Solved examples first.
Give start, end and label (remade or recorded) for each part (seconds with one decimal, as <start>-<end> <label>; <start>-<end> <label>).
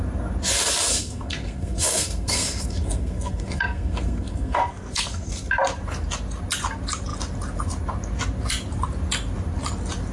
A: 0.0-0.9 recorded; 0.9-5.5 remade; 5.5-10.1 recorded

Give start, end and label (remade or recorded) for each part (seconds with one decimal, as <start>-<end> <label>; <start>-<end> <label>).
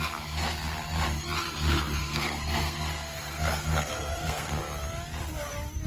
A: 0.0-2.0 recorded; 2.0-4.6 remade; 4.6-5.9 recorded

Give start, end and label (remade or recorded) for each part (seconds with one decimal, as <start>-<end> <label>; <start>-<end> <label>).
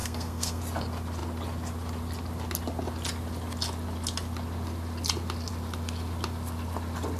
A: 0.0-0.6 remade; 0.6-7.2 recorded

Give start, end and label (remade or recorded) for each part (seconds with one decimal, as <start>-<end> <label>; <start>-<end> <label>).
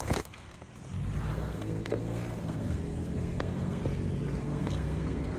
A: 0.0-0.7 remade; 0.7-1.3 recorded; 1.3-3.8 remade; 3.8-4.4 recorded; 4.4-5.4 remade